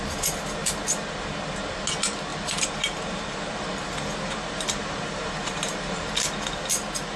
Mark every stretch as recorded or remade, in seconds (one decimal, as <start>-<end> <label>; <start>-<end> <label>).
0.0-2.3 recorded; 2.3-6.1 remade; 6.1-7.2 recorded